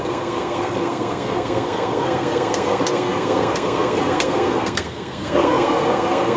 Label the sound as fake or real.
fake